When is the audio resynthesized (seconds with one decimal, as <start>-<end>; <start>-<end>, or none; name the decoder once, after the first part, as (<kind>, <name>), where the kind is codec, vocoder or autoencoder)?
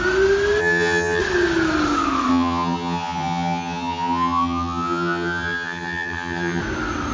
0.6-1.2 (vocoder, HiFi-GAN); 2.3-6.6